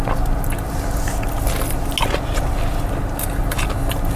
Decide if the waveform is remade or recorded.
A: recorded